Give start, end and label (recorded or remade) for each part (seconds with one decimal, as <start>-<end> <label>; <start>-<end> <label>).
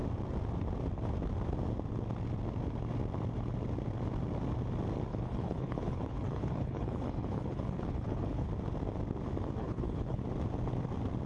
0.0-5.1 recorded; 5.1-8.5 remade; 8.5-9.6 recorded; 9.6-10.2 remade; 10.2-11.3 recorded